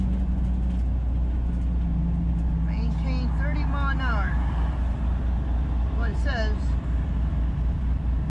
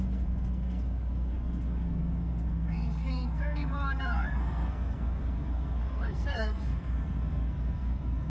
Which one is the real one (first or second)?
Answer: first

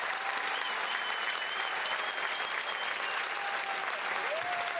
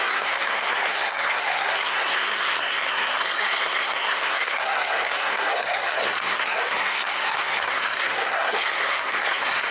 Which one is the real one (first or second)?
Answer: first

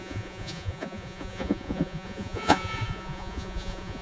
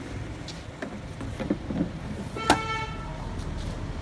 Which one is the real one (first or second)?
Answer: second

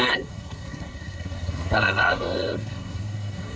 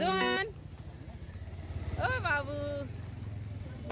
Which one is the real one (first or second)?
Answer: second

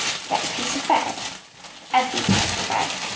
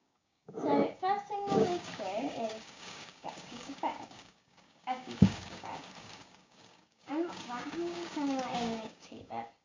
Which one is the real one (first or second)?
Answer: first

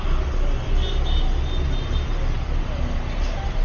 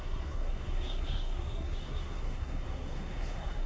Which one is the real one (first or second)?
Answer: first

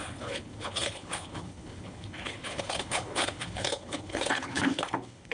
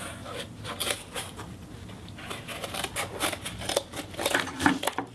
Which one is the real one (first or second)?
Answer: second